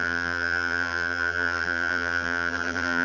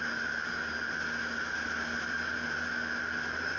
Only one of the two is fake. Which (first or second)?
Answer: first